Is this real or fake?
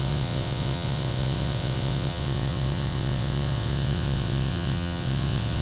fake